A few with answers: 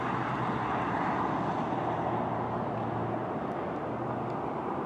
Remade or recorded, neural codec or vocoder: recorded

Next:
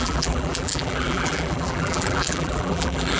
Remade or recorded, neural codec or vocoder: remade, vocoder, BigVGAN v2